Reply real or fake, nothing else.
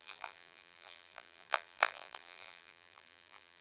fake